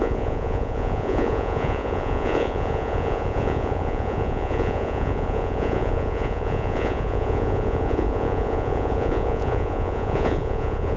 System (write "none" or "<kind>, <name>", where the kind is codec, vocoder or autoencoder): vocoder, Vocos